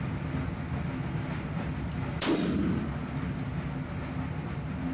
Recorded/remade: recorded